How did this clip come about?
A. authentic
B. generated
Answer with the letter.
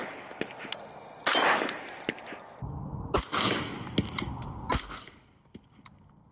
A